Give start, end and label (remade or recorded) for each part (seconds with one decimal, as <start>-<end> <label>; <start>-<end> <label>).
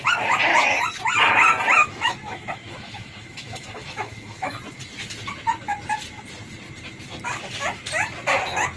0.0-1.8 recorded; 1.8-4.6 remade; 4.6-8.8 recorded